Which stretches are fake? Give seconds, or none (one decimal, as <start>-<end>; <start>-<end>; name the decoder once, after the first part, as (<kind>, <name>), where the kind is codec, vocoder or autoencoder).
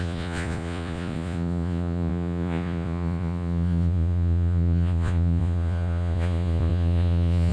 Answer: 0.0-7.5 (vocoder, Vocos)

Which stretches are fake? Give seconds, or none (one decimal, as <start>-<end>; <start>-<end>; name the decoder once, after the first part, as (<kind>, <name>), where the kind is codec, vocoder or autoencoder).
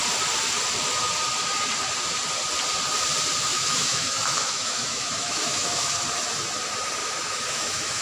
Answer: 3.5-5.9 (autoencoder, DAC-VAE); 7.0-8.0